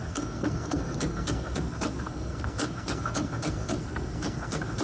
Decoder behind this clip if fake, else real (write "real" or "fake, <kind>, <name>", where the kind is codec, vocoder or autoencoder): fake, codec, SNAC